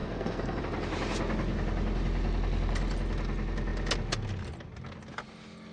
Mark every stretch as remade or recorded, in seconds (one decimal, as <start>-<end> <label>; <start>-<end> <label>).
0.0-0.6 remade; 0.6-5.7 recorded